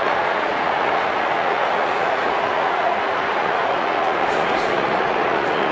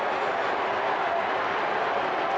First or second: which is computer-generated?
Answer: first